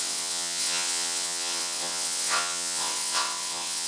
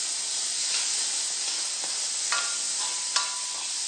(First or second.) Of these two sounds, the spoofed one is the first